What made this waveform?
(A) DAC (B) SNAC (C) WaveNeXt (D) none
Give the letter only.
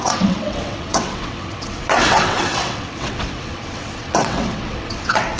C